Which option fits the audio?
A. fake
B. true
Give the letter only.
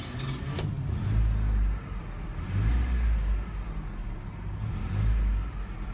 B